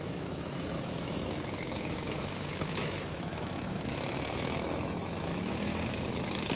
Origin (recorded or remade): remade